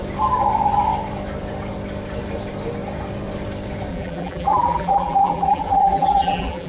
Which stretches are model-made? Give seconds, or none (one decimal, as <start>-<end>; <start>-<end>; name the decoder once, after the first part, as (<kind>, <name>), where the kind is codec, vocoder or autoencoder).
3.9-6.7 (vocoder, BigVGAN v2)